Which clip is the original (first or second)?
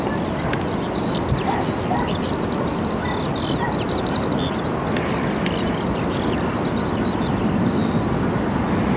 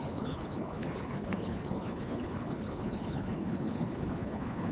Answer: first